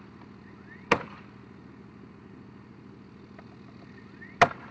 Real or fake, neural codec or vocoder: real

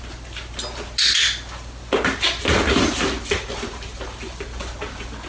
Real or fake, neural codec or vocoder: real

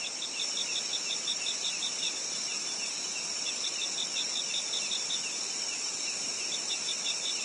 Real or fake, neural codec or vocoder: real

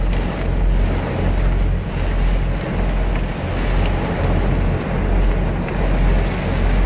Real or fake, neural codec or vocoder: real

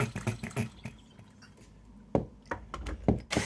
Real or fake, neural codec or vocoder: real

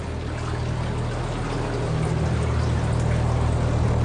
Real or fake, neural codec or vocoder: real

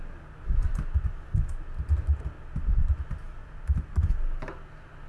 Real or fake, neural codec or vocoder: real